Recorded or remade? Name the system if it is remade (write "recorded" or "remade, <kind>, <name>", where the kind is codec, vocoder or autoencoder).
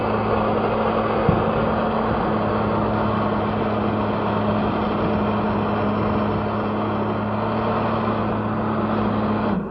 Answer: recorded